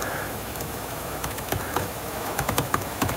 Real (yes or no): no